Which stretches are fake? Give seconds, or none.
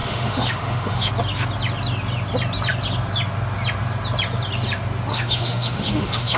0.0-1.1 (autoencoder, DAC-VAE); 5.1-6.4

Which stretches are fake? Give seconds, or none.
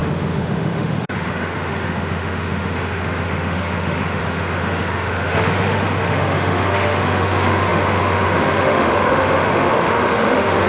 0.0-10.7 (autoencoder, DAC-VAE)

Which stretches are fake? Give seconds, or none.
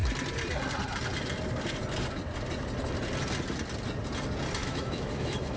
4.6-5.6 (autoencoder, DAC-VAE)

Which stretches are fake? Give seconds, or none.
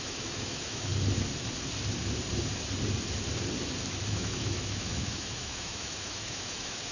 0.0-0.9 (autoencoder, DAC-VAE); 4.1-6.9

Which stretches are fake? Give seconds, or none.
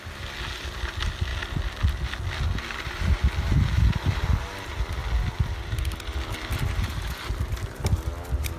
none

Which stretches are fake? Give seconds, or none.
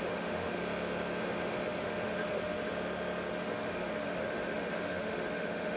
0.0-0.6 (autoencoder, DAC-VAE); 1.2-2.7; 3.3-5.8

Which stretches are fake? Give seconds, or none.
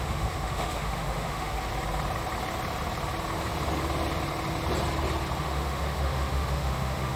0.0-1.7 (autoencoder, DAC-VAE); 5.4-7.2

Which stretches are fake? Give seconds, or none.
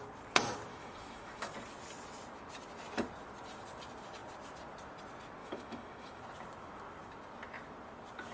0.7-1.5 (autoencoder, DAC-VAE); 5.4-6.2